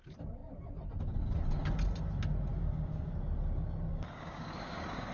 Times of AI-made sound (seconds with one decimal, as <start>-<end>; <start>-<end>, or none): 2.5-3.1; 3.9-5.1